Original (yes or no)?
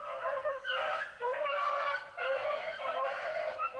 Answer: no